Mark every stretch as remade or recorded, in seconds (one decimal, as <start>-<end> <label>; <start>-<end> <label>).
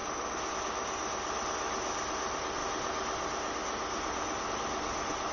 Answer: 0.0-5.3 recorded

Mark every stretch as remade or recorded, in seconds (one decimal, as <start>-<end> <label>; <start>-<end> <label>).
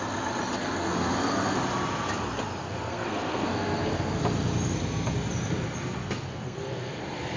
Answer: 0.0-0.6 recorded; 0.6-1.6 remade; 1.6-2.6 recorded; 2.6-4.2 remade; 4.2-6.3 recorded; 6.3-7.0 remade; 7.0-7.4 recorded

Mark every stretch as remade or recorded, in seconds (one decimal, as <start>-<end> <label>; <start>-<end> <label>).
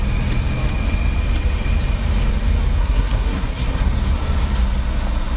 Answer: 0.0-2.8 recorded; 2.8-3.9 remade; 3.9-5.4 recorded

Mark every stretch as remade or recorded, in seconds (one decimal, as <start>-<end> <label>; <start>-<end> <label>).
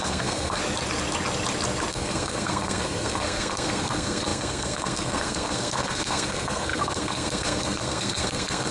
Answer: 0.0-0.6 remade; 0.6-1.9 recorded; 1.9-8.7 remade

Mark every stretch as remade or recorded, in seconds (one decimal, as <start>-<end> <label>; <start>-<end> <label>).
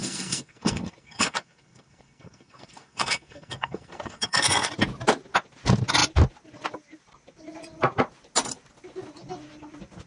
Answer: 0.0-4.7 remade; 4.7-10.1 recorded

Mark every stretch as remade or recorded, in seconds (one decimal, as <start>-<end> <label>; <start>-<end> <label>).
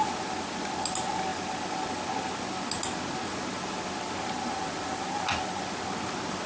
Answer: 0.0-6.5 recorded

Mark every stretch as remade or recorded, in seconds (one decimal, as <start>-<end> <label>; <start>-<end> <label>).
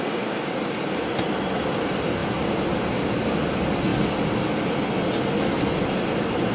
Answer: 0.0-6.5 recorded